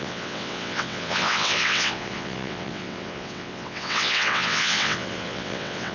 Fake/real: fake